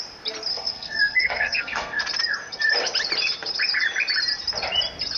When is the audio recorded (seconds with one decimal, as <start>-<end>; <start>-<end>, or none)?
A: 0.0-0.5; 2.0-5.2